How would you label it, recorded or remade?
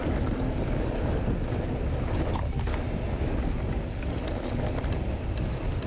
recorded